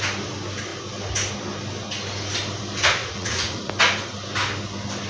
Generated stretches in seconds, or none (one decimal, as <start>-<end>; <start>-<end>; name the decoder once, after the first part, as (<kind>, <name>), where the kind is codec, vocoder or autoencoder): 3.0-3.7 (vocoder, Vocos)